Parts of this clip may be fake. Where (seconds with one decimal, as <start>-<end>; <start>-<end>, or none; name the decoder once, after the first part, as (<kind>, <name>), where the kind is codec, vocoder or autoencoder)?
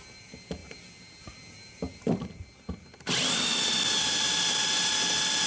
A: 0.6-3.9 (vocoder, BigVGAN v2)